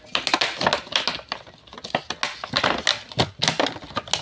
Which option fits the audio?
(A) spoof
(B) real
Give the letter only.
B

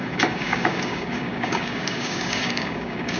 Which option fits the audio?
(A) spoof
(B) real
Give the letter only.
A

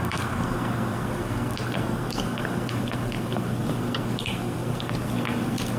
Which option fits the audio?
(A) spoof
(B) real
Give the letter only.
A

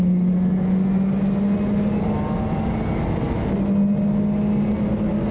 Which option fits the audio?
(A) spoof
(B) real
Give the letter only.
B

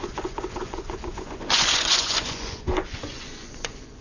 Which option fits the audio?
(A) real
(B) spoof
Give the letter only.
B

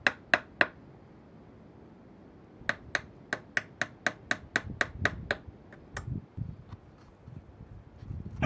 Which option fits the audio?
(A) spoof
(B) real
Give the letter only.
B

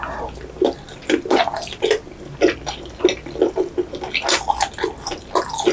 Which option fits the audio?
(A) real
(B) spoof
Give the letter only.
A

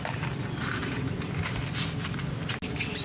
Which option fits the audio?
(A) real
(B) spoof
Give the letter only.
A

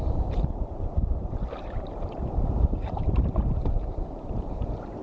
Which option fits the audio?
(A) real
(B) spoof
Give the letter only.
B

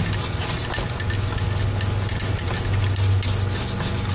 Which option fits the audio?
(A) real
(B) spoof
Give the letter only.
A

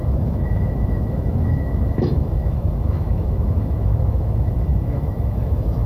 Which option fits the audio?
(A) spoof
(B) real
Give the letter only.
A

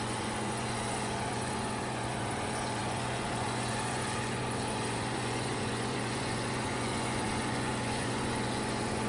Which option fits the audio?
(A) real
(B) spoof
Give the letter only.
B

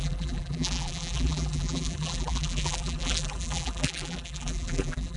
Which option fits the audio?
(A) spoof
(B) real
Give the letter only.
A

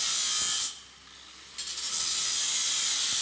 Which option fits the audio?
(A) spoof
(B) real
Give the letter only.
B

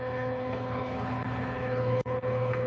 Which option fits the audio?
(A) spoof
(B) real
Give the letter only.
A